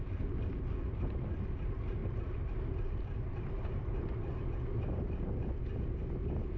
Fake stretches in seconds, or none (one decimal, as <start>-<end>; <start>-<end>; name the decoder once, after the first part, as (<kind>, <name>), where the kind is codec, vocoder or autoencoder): none